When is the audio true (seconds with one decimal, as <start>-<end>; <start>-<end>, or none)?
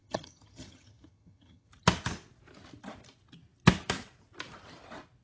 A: 1.7-5.2